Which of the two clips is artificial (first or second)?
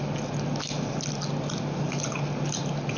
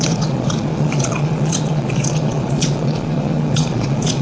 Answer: second